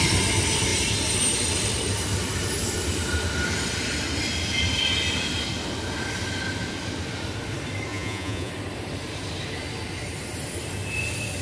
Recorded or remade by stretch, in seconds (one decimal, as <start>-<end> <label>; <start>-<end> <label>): 0.0-7.9 recorded; 7.9-8.5 remade; 8.5-11.4 recorded